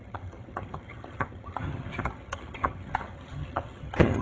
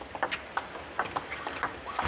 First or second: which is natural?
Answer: second